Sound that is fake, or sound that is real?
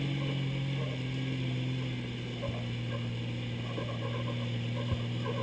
real